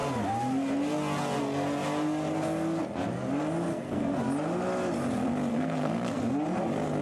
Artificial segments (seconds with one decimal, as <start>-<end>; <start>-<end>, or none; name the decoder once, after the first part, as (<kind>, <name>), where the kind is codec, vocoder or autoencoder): 3.7-4.2 (codec, SNAC); 5.5-6.2